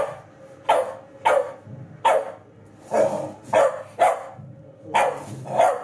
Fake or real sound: real